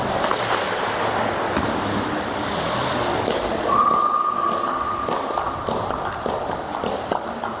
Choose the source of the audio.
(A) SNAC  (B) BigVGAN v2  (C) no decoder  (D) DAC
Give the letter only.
C